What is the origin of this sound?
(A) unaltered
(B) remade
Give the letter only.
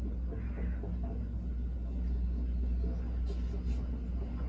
A